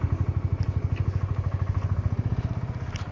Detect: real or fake real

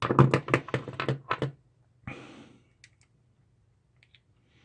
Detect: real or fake real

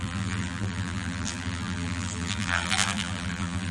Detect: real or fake fake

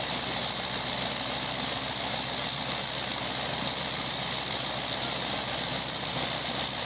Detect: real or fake real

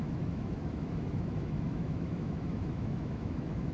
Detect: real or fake fake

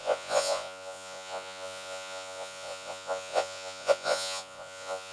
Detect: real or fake fake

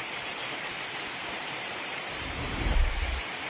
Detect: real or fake fake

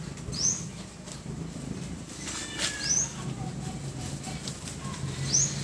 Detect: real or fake real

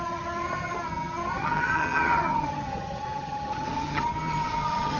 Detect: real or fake fake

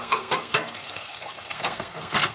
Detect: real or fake fake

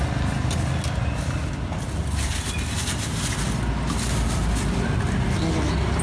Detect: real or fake real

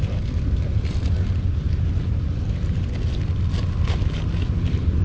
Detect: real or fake real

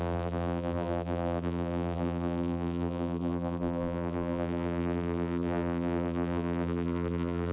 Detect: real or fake fake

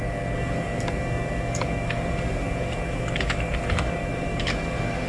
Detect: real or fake fake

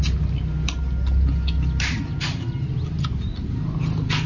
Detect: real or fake real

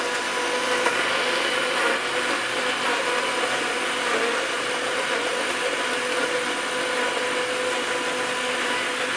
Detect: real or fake real